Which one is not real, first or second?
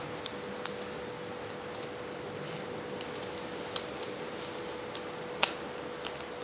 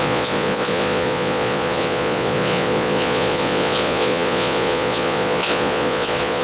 second